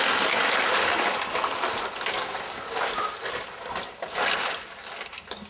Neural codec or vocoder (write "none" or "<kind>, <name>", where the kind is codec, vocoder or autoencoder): none